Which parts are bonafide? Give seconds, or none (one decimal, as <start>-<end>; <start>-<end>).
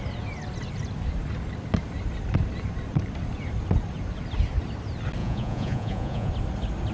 0.0-5.2; 6.3-6.9